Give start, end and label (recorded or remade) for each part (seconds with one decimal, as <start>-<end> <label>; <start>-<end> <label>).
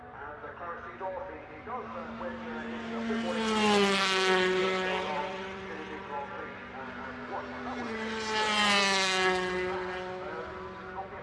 0.0-4.6 recorded; 4.6-6.3 remade; 6.3-11.2 recorded